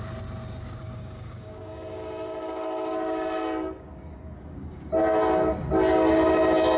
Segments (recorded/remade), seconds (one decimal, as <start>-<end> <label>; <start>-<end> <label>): 0.0-0.8 recorded; 0.8-4.9 remade; 4.9-6.8 recorded